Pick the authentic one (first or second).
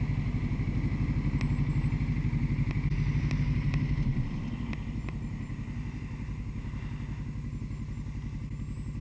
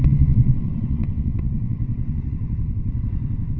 first